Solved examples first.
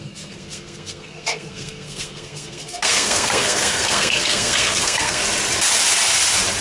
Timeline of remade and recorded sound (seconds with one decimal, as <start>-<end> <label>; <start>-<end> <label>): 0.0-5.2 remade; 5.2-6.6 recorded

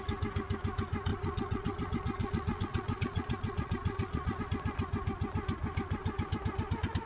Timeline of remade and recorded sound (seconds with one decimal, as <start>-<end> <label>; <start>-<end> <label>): 0.0-1.1 recorded; 1.1-4.4 remade; 4.4-7.1 recorded

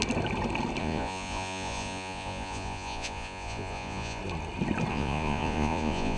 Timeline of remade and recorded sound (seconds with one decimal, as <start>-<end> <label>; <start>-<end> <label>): 0.0-0.8 recorded; 0.8-4.2 remade; 4.2-4.9 recorded; 4.9-6.2 remade